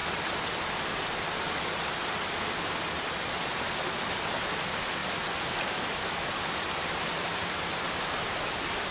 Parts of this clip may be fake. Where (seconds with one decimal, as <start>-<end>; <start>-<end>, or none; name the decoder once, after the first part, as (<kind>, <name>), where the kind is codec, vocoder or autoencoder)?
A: none